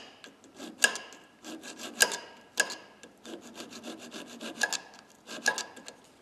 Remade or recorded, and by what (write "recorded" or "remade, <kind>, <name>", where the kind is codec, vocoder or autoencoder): recorded